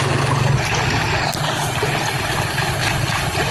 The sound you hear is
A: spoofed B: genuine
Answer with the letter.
B